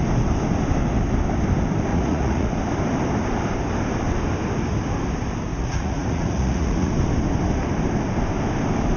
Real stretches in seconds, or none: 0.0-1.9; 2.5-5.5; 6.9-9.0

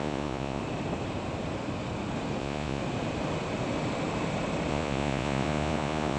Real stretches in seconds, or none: 0.6-2.4; 2.8-4.7